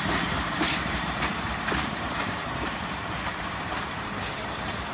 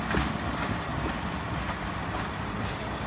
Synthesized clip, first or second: first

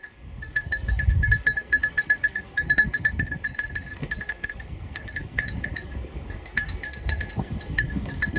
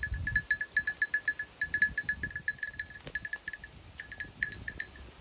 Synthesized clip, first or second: first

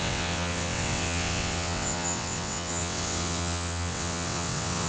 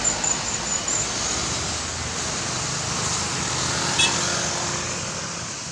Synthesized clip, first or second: first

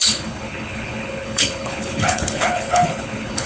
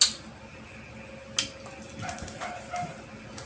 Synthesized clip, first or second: first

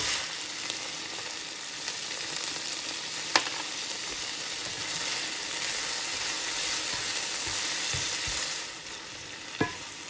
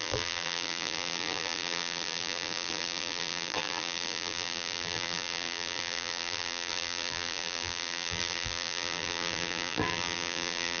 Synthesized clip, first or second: second